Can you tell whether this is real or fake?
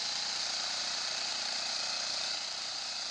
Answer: fake